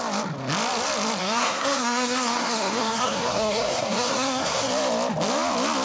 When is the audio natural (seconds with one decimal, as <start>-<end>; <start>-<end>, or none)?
0.0-1.2; 4.7-5.8